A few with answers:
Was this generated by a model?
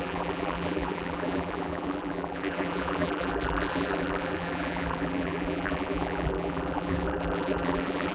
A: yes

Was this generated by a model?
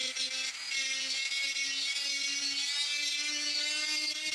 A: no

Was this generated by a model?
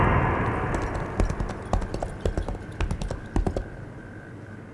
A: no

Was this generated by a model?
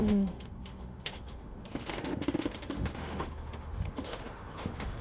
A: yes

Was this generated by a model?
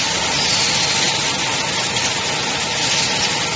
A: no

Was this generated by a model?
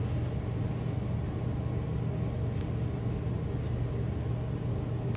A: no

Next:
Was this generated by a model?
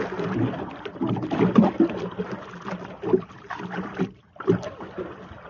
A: no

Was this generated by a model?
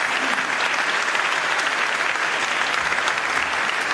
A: no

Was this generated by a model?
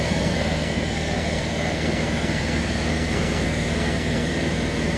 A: yes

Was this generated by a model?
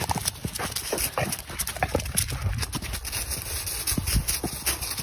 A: no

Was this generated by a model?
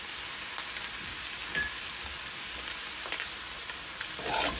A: no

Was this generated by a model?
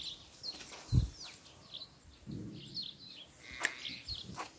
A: no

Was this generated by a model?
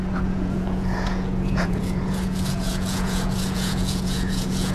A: yes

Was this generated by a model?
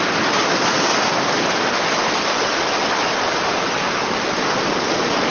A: no